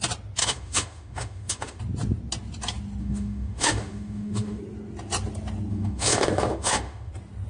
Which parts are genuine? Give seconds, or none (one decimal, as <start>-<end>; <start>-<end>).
0.0-0.4; 1.8-3.0; 4.6-5.7; 7.1-7.5